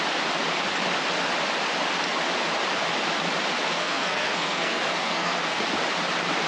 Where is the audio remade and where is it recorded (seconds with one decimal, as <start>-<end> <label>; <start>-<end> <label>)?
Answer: 0.0-3.7 recorded; 3.7-5.6 remade; 5.6-6.5 recorded